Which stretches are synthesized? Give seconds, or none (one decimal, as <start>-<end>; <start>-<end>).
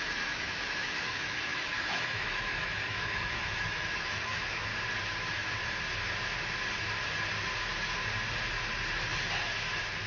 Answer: 0.0-4.7